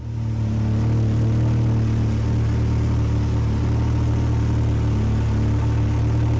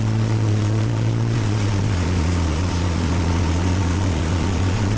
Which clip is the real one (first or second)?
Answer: first